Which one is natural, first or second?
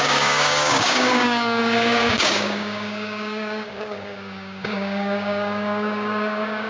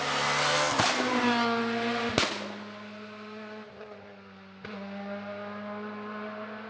second